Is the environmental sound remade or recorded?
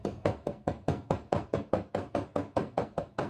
remade